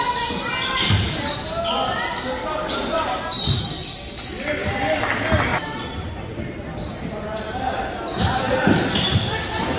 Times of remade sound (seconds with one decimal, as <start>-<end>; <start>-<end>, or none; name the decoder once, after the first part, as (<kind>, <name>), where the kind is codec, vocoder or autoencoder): 2.1-3.5 (vocoder, BigVGAN v2)